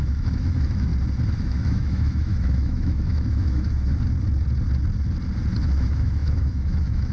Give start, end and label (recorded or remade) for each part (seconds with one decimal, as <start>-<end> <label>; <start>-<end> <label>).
0.0-0.9 remade; 0.9-1.4 recorded; 1.4-3.9 remade; 3.9-5.6 recorded; 5.6-7.1 remade